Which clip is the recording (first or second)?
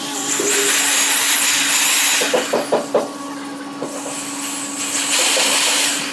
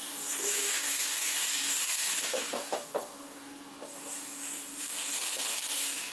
first